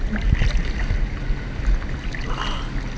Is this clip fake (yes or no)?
no